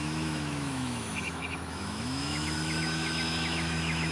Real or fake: fake